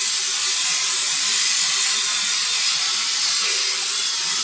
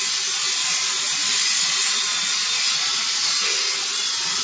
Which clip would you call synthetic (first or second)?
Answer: first